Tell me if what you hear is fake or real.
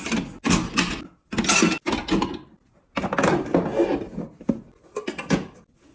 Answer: real